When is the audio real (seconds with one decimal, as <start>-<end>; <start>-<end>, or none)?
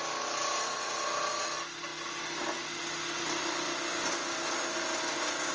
0.0-0.4; 1.0-5.5